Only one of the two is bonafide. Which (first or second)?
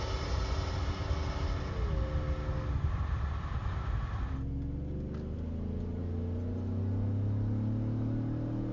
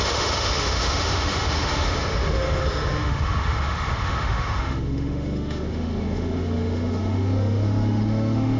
first